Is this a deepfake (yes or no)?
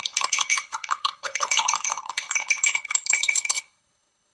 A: yes